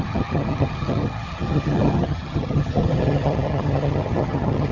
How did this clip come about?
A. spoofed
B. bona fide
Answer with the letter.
A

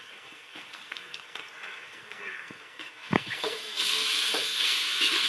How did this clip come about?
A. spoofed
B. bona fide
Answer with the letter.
A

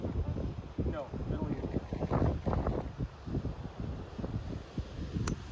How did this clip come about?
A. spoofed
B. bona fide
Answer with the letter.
B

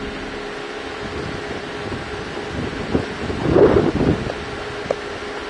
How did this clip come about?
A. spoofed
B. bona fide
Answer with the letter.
B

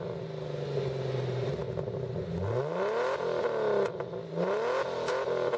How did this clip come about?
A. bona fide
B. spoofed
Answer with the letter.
A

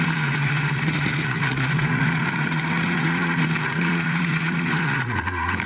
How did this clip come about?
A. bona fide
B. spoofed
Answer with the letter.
B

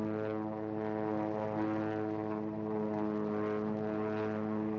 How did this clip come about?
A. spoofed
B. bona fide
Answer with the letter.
B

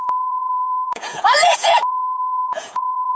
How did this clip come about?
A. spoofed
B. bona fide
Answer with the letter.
A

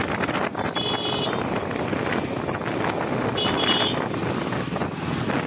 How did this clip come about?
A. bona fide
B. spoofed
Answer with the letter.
A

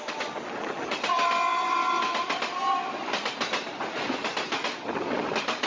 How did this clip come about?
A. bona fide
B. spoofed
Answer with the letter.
A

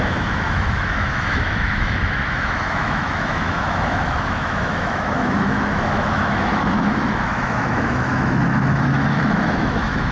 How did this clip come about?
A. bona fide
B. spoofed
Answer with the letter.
B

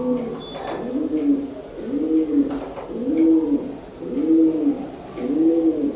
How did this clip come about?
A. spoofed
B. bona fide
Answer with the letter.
B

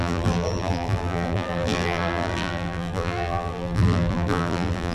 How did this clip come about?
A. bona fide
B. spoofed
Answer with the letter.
B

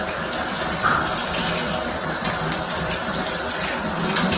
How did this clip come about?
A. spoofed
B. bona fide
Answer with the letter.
B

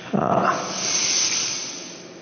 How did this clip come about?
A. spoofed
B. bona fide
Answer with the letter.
B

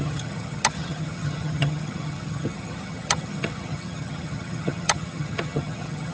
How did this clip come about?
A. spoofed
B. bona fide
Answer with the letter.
A